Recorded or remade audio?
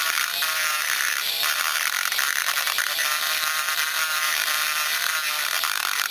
remade